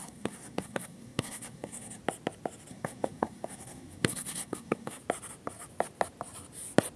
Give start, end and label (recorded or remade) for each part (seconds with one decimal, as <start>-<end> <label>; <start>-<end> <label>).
0.0-2.0 remade; 2.0-2.7 recorded; 2.7-5.0 remade; 5.0-7.0 recorded